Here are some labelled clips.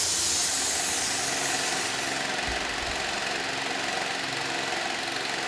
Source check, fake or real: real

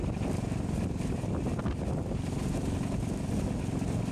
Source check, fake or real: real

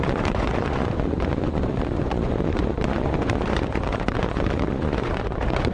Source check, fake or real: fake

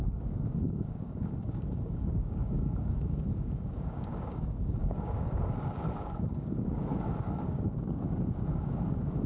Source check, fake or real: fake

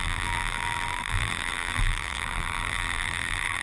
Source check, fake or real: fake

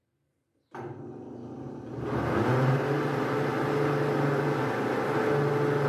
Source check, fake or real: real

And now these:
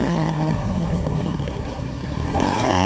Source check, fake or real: fake